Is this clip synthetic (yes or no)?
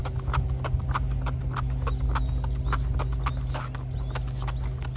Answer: no